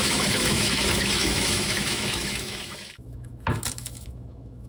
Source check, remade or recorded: remade